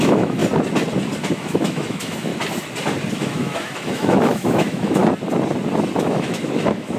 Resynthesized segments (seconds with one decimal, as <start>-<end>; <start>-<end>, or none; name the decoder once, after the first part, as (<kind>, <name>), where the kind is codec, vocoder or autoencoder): 0.0-0.4 (autoencoder, DAC-VAE); 1.3-2.3; 3.1-5.0; 6.0-7.0